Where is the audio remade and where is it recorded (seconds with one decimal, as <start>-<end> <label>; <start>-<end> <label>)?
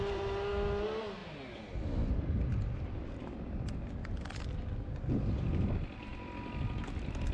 0.0-6.1 recorded; 6.1-7.3 remade